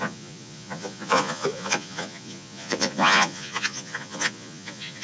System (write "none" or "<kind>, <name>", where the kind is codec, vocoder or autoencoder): vocoder, Vocos